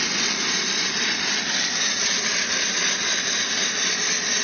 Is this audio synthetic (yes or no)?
no